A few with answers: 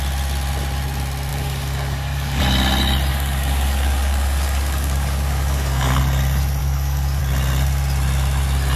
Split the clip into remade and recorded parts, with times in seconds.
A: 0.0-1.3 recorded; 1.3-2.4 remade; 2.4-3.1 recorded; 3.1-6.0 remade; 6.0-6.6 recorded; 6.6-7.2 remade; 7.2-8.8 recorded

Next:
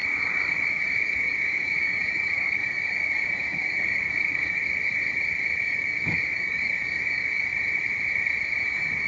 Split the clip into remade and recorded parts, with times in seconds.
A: 0.0-0.7 recorded; 0.7-4.6 remade; 4.6-5.6 recorded; 5.6-7.5 remade; 7.5-8.6 recorded; 8.6-9.1 remade